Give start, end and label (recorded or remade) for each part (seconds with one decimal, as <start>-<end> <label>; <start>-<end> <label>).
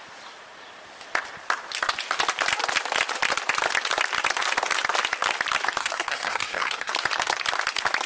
0.0-5.8 recorded; 5.8-6.9 remade; 6.9-8.1 recorded